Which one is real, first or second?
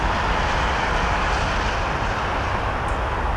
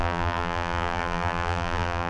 first